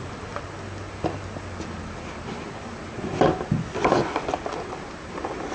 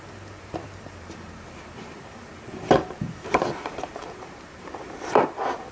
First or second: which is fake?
second